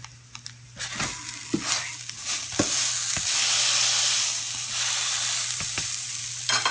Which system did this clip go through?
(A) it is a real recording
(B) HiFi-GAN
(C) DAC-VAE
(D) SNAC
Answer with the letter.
A